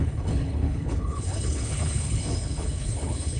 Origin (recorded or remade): remade